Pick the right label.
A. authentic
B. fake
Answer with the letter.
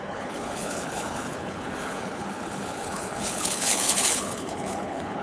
B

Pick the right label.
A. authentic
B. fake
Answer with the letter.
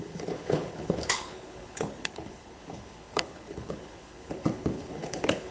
B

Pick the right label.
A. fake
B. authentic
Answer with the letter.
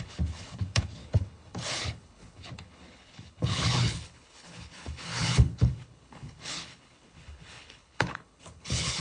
A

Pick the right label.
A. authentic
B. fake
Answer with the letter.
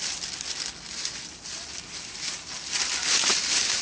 A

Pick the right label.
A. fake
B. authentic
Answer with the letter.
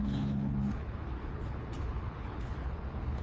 A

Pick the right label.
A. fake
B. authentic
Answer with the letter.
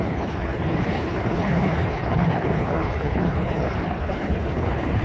A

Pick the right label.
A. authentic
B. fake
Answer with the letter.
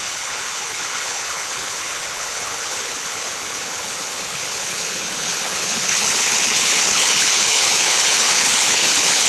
B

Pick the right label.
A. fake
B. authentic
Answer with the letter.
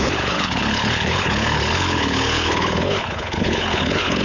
A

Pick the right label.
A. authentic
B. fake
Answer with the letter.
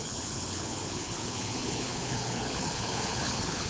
B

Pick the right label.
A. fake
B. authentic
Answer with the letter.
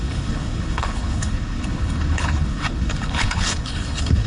A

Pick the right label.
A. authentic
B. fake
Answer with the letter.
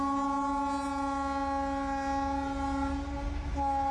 A